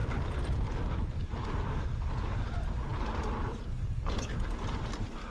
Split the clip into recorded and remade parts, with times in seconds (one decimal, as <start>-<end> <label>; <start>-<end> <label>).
0.0-5.3 recorded